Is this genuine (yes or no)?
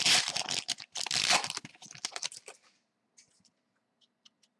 yes